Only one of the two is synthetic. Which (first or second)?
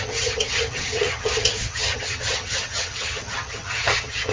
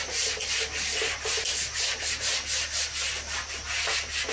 first